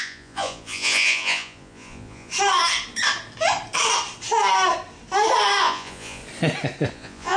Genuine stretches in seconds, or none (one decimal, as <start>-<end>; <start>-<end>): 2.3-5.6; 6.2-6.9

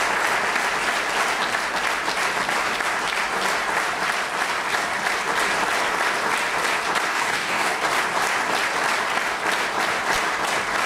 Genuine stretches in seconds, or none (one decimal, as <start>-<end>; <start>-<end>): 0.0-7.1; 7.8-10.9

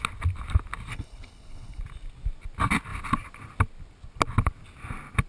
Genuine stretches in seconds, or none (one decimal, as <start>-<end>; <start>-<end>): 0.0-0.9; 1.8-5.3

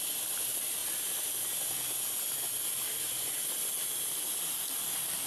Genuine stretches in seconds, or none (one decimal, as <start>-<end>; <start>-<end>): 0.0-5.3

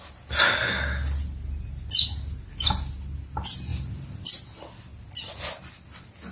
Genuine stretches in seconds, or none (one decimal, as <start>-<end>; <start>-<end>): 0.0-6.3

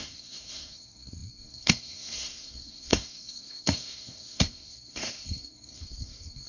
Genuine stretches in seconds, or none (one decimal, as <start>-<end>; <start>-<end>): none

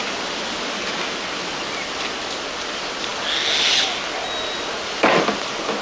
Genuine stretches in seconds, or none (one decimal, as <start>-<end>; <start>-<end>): 0.0-5.8